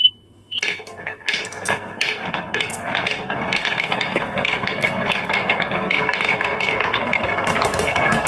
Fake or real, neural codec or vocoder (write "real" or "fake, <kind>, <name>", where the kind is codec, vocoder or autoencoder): fake, codec, SNAC